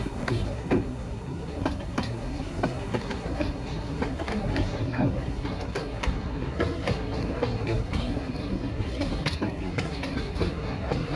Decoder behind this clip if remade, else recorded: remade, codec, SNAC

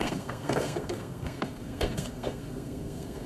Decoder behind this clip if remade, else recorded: remade, codec, SNAC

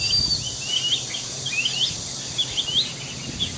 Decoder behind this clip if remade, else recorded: recorded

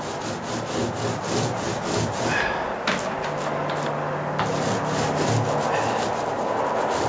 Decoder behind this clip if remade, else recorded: recorded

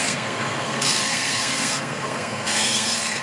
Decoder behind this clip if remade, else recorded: remade, codec, SNAC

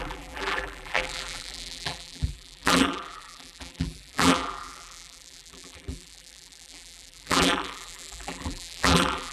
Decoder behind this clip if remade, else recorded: remade, vocoder, BigVGAN v2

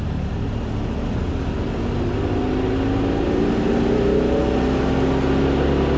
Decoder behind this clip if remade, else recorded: recorded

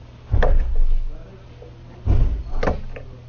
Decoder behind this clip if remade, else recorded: recorded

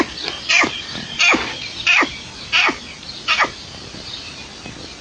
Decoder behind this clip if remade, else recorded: recorded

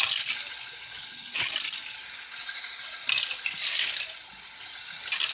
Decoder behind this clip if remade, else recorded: recorded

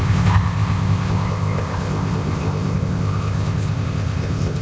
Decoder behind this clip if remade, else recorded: remade, codec, ZipCodec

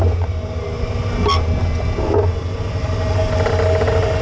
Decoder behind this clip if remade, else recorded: recorded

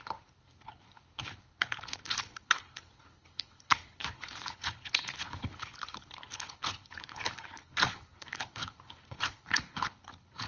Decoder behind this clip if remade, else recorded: remade, codec, HILCodec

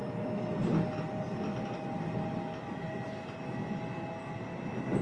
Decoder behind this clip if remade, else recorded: recorded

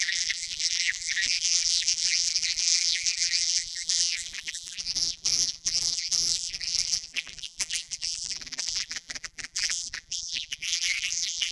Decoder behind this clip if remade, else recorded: remade, vocoder, BigVGAN v2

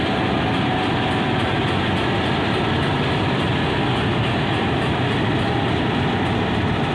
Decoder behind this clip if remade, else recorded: recorded